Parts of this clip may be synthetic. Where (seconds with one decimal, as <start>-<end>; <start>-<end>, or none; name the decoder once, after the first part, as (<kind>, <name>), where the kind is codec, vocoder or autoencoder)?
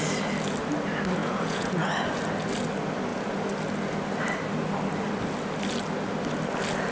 1.2-1.9 (vocoder, Vocos)